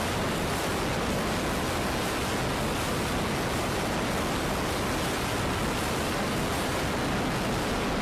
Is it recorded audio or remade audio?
recorded